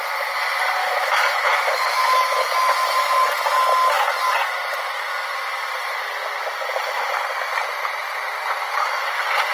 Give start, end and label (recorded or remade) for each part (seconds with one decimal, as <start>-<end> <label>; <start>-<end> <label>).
0.0-0.8 recorded; 0.8-2.7 remade; 2.7-9.5 recorded